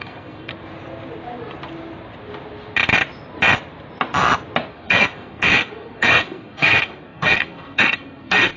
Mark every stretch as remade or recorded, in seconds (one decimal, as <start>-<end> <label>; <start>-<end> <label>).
0.0-0.5 remade; 0.5-4.7 recorded; 4.7-8.6 remade